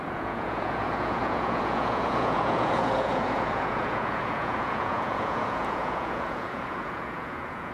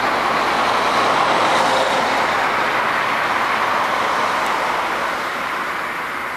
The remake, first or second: first